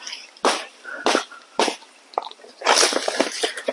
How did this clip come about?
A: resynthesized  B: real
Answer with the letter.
B